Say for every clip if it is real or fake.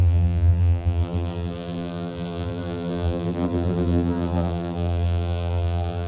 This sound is fake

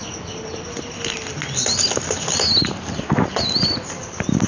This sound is real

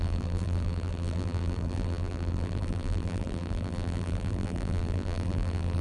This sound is fake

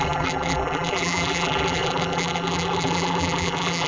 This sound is fake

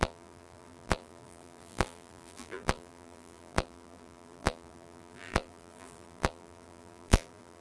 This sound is fake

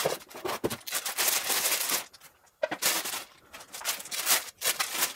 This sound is real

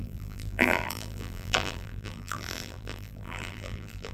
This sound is fake